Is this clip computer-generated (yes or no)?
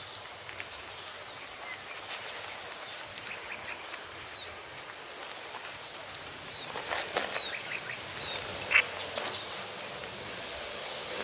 no